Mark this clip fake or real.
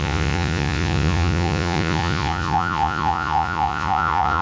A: fake